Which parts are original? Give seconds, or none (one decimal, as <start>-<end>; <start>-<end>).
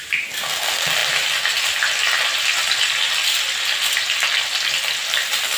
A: 0.0-5.6